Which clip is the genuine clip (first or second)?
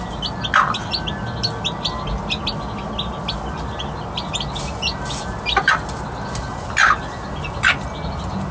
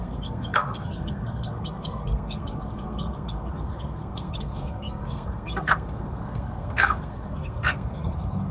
first